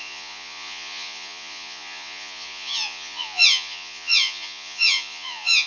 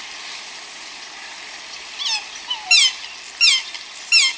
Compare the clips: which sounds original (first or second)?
second